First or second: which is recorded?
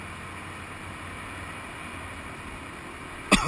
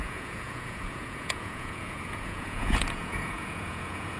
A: first